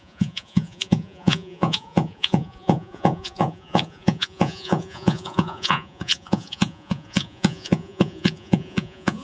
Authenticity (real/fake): fake